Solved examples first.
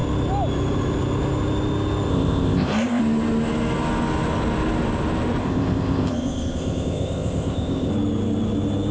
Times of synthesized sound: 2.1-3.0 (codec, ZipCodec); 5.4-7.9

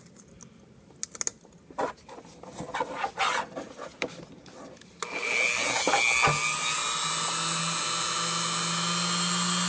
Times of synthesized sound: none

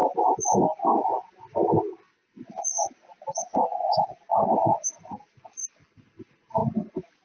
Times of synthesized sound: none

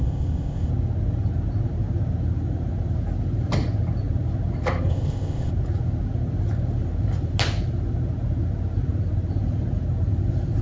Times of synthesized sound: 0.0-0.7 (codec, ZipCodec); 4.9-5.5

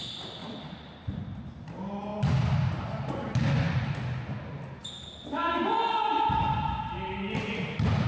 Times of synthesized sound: none